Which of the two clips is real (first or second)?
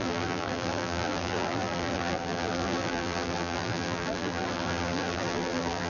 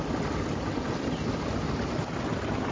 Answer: second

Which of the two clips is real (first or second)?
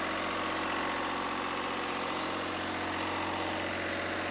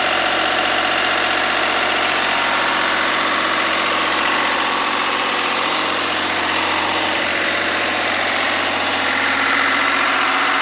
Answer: first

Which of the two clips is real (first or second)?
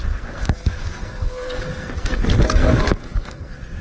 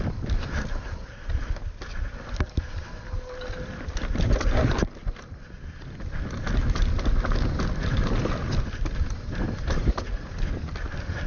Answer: second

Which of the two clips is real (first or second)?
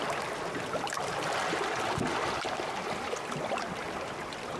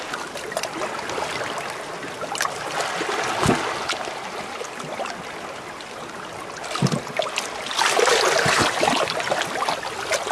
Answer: second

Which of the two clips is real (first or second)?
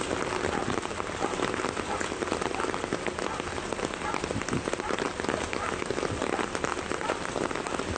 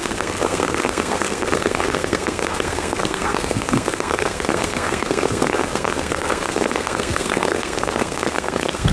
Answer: first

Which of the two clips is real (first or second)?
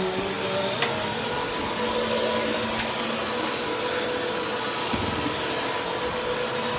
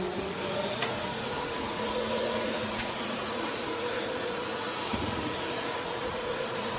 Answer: first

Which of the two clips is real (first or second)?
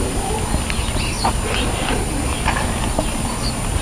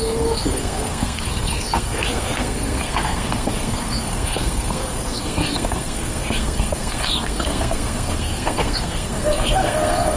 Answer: first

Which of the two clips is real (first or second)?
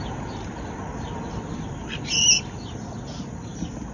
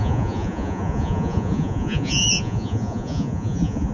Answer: first